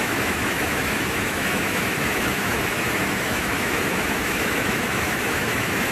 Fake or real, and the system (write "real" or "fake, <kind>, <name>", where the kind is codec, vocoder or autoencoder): fake, autoencoder, DAC-VAE